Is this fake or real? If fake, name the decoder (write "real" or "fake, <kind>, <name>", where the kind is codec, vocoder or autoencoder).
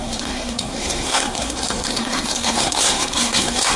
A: fake, codec, SNAC